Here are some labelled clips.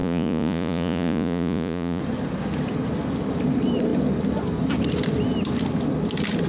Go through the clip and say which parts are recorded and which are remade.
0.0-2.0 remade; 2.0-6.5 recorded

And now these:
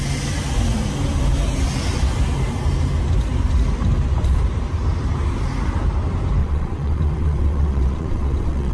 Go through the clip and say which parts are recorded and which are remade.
0.0-6.4 recorded; 6.4-8.7 remade

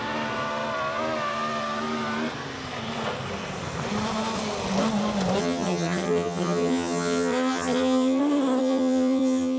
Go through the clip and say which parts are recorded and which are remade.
0.0-5.4 recorded; 5.4-8.2 remade; 8.2-8.6 recorded; 8.6-9.6 remade

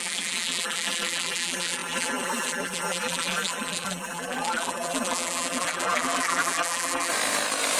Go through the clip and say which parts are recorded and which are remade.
0.0-7.1 remade; 7.1-7.8 recorded

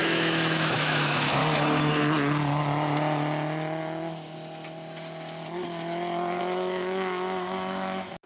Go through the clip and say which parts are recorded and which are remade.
0.0-1.4 remade; 1.4-6.4 recorded; 6.4-8.3 remade